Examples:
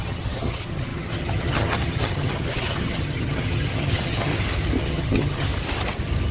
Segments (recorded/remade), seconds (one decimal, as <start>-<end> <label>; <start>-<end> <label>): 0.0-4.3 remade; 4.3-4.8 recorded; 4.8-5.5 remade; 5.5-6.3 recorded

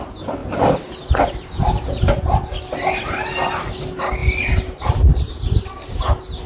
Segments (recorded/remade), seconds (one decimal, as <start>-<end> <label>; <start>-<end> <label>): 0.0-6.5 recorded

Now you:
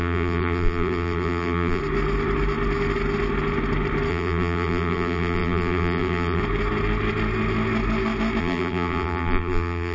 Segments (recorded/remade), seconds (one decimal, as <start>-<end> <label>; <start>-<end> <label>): 0.0-1.8 remade; 1.8-4.1 recorded; 4.1-6.4 remade; 6.4-8.4 recorded; 8.4-9.9 remade

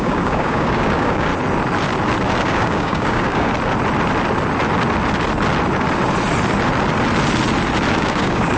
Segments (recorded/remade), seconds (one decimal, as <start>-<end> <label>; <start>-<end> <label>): 0.0-1.3 remade; 1.3-2.4 recorded; 2.4-3.5 remade; 3.5-7.9 recorded; 7.9-8.6 remade